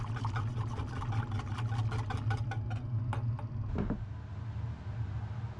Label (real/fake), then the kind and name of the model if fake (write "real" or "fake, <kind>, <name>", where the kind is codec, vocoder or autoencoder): real